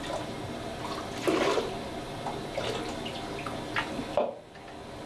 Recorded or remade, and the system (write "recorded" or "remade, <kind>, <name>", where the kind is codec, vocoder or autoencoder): recorded